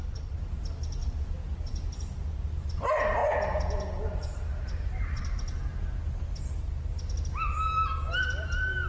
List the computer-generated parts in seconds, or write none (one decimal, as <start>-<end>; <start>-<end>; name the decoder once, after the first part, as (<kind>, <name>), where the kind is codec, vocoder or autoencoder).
3.2-4.9 (vocoder, Vocos)